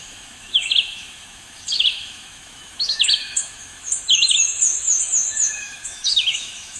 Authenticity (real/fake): fake